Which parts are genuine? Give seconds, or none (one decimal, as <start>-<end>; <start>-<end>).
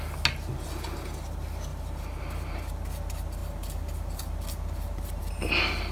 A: 0.0-1.7; 2.2-5.9